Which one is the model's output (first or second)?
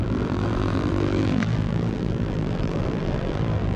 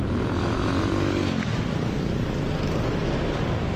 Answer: first